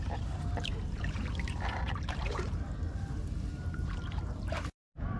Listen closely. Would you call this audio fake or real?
fake